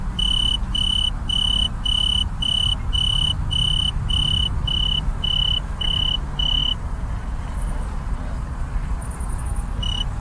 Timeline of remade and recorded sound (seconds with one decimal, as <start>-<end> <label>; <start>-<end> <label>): 0.0-6.6 recorded; 6.6-9.4 remade; 9.4-10.2 recorded